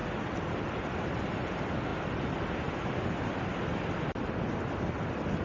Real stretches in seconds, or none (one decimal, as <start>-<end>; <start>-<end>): 0.0-5.4